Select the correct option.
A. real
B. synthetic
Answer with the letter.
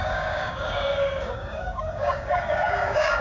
B